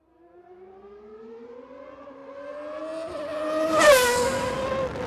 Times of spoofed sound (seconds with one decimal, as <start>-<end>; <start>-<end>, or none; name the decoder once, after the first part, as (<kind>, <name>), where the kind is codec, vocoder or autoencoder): none